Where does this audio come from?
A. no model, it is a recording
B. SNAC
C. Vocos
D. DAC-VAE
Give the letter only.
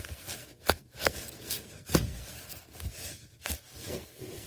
B